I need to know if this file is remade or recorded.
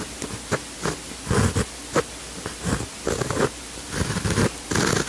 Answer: recorded